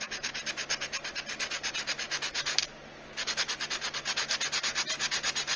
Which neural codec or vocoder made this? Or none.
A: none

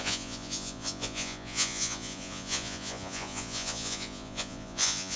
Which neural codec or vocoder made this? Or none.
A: vocoder, Vocos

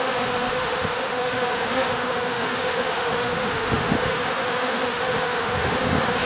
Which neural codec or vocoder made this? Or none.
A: autoencoder, DAC-VAE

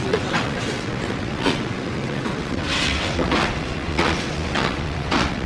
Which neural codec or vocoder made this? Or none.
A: vocoder, WaveNeXt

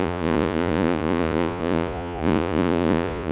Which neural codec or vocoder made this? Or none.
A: vocoder, Vocos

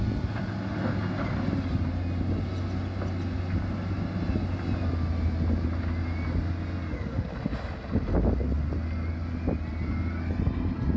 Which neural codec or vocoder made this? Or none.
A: none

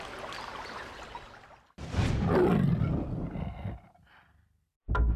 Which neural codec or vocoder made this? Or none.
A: none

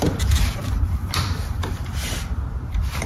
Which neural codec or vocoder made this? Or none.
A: none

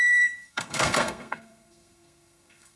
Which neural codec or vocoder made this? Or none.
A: codec, SNAC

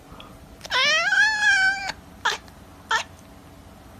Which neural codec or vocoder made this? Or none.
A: none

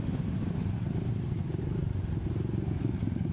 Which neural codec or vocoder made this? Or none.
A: none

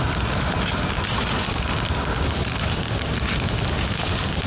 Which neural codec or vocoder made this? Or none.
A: none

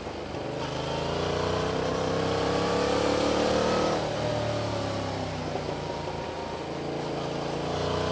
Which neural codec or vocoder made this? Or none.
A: none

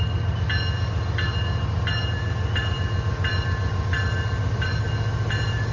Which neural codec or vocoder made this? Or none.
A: vocoder, BigVGAN v2